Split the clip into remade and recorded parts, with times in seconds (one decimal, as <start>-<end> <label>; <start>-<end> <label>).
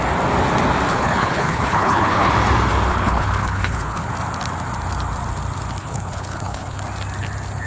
0.0-0.9 recorded; 0.9-2.3 remade; 2.3-2.9 recorded; 2.9-4.1 remade; 4.1-5.8 recorded; 5.8-6.8 remade; 6.8-7.7 recorded